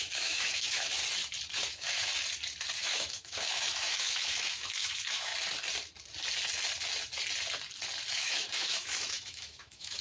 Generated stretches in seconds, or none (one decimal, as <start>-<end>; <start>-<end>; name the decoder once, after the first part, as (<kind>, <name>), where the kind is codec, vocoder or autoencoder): 0.0-1.0 (autoencoder, DAC-VAE); 1.7-2.1; 2.8-5.3; 8.1-10.0